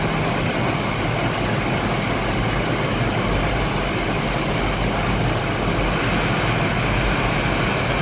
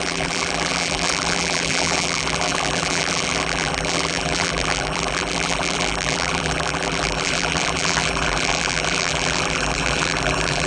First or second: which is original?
first